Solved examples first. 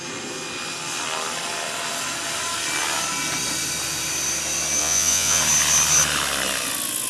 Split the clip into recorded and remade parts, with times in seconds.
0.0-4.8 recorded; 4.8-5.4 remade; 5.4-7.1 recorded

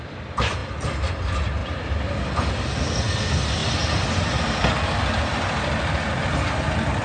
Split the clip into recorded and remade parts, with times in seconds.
0.0-7.0 recorded